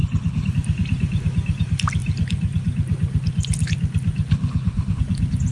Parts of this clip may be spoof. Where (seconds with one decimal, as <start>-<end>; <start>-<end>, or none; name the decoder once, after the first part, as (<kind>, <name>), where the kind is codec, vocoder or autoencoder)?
0.0-0.5 (codec, HILCodec); 4.3-5.0